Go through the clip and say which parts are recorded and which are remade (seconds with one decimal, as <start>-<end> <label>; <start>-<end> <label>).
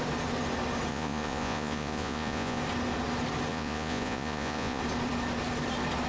0.0-0.9 recorded; 0.9-2.6 remade; 2.6-3.5 recorded; 3.5-4.8 remade; 4.8-6.1 recorded